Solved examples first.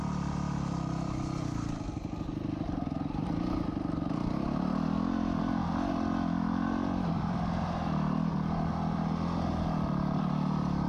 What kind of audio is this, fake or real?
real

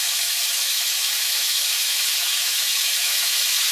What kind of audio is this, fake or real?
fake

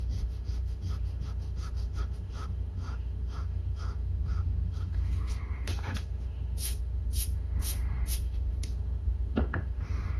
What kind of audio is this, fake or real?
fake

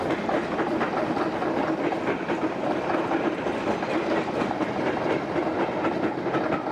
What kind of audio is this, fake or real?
real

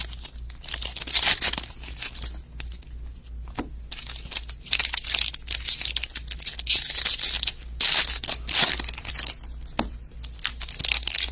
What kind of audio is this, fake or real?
real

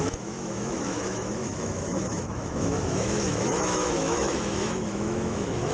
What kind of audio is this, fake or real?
fake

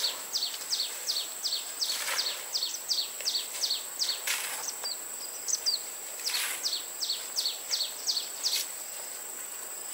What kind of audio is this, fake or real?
real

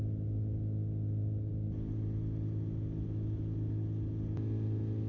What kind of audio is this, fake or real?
real